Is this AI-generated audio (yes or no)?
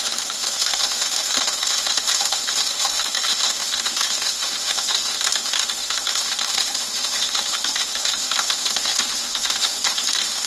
yes